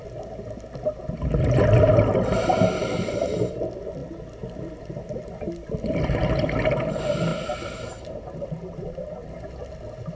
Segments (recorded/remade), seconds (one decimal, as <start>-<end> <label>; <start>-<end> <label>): 0.0-2.8 recorded; 2.8-3.5 remade; 3.5-7.3 recorded; 7.3-9.3 remade; 9.3-10.1 recorded